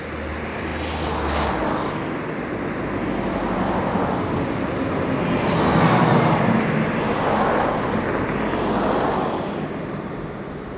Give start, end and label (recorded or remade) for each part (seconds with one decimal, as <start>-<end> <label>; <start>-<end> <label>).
0.0-10.8 recorded